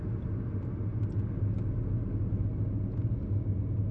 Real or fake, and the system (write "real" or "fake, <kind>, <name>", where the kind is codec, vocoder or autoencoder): real